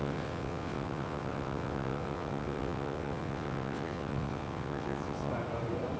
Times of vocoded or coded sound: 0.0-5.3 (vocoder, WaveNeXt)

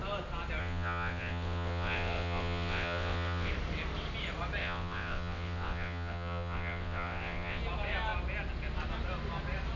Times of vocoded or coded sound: 0.6-3.5 (vocoder, WaveNeXt); 4.6-7.6

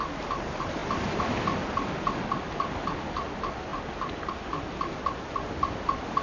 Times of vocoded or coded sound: none

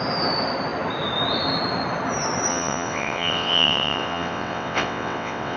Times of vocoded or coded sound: 2.5-5.6 (vocoder, WaveNeXt)

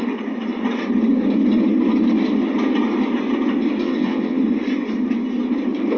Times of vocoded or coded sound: 3.8-4.4 (vocoder, WaveNeXt)

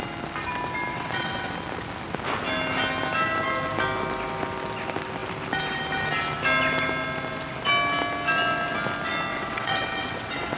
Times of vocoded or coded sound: 0.9-1.5 (vocoder, WaveNeXt); 9.3-10.6